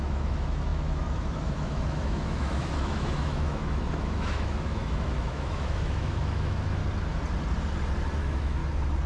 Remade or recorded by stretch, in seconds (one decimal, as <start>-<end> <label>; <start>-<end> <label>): 0.0-6.8 remade; 6.8-8.2 recorded; 8.2-8.6 remade; 8.6-9.1 recorded